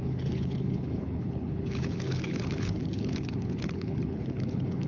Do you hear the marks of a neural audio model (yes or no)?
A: yes